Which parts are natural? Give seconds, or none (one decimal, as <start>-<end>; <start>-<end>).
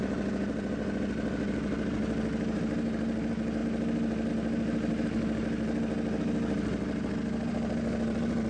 0.0-8.5